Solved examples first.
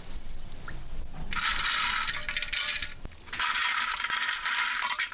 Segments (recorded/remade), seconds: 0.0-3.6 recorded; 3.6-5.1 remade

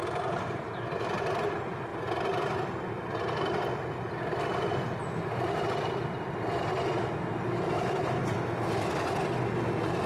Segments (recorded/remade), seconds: 0.0-0.7 remade; 0.7-10.1 recorded

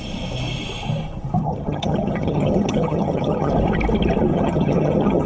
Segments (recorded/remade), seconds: 0.0-1.4 recorded; 1.4-3.5 remade; 3.5-4.3 recorded; 4.3-5.3 remade

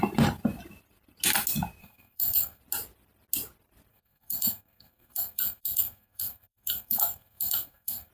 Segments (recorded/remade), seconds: 0.0-1.8 recorded; 1.8-2.6 remade; 2.6-3.9 recorded; 3.9-8.1 remade

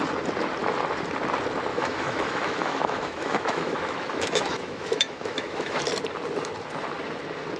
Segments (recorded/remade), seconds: 0.0-1.7 recorded; 1.7-5.8 remade; 5.8-7.6 recorded

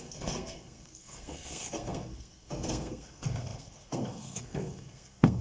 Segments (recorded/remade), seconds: 0.0-5.4 remade